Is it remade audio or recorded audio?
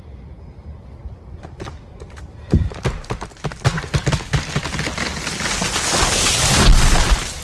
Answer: recorded